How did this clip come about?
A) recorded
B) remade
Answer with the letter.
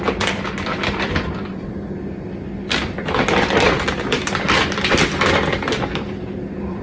B